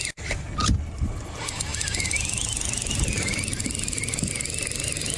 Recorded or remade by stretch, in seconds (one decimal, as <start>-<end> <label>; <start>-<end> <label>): 0.0-0.6 recorded; 0.6-1.1 remade; 1.1-5.2 recorded